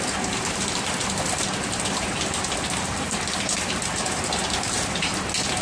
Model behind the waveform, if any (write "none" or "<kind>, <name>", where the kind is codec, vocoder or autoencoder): none